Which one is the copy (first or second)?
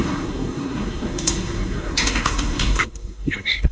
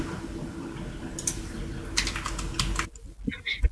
first